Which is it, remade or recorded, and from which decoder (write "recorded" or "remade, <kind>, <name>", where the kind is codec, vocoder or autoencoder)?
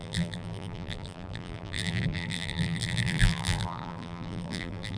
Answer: remade, vocoder, BigVGAN v2